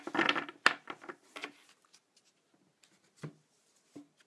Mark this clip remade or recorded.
recorded